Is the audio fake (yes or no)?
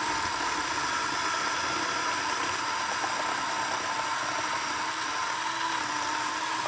no